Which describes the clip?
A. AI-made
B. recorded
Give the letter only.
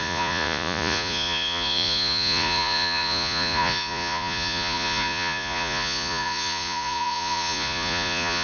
A